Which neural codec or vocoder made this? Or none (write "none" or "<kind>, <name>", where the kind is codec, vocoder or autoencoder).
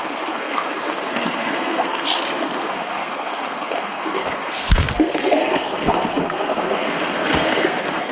codec, SNAC